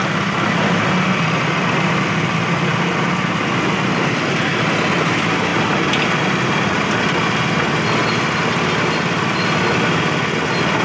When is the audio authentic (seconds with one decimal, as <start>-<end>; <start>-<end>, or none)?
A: 0.0-5.5; 6.2-10.8